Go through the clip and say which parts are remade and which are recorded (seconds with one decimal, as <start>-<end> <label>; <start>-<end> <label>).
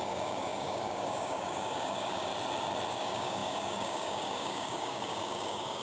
0.0-2.3 remade; 2.3-2.9 recorded; 2.9-5.8 remade